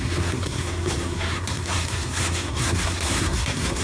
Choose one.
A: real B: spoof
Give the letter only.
B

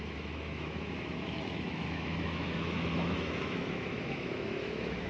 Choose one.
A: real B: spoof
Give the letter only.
B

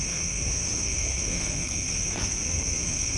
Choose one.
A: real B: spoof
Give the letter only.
B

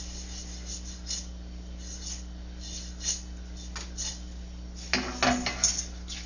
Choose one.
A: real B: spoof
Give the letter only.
A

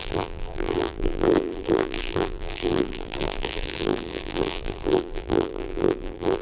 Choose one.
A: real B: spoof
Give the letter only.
B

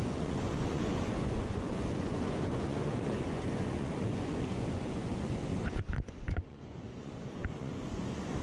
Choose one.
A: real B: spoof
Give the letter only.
B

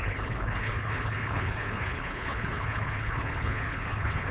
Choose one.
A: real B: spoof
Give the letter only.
B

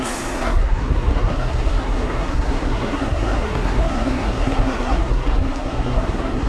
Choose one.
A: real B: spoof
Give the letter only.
B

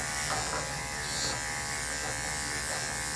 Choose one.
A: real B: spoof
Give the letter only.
A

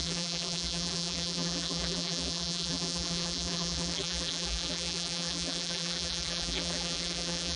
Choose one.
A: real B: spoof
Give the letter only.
B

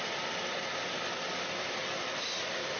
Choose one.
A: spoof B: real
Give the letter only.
B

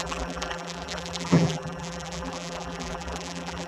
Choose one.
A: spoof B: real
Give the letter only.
A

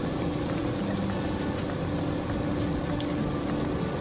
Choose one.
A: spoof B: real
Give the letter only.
B